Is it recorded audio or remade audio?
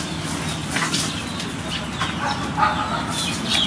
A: recorded